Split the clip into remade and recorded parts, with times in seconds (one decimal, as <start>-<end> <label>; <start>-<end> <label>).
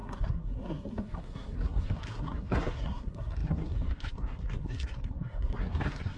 0.0-6.2 remade